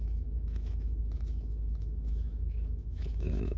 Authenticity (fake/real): fake